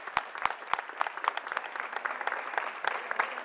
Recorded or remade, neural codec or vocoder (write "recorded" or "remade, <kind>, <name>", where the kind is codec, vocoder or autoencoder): recorded